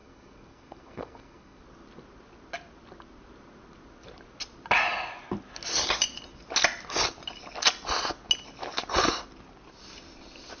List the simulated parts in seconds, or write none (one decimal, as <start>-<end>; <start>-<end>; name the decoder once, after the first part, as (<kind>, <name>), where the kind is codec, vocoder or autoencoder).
0.0-1.6 (codec, SNAC)